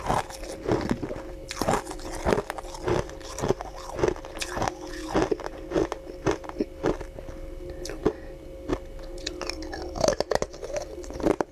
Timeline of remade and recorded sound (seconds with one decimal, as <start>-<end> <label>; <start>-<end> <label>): 0.0-11.5 recorded